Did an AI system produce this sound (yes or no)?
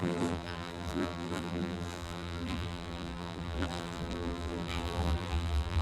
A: yes